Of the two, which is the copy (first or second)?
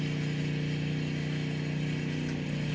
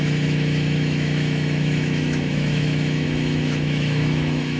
second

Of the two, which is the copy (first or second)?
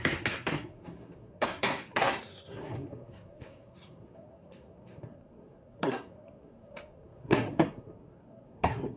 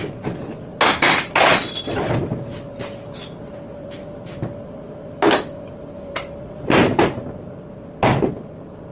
first